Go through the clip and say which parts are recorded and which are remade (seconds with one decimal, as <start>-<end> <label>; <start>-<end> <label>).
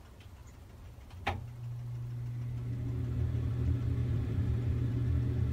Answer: 0.0-4.0 recorded; 4.0-4.9 remade; 4.9-5.5 recorded